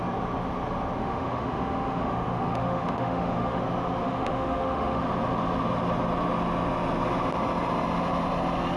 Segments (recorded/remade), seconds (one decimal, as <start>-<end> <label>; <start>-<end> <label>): 0.0-1.0 recorded; 1.0-3.6 remade; 3.6-4.0 recorded; 4.0-5.0 remade; 5.0-8.8 recorded